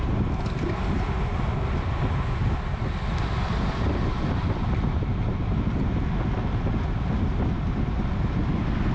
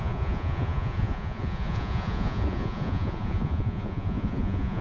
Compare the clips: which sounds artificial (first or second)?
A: second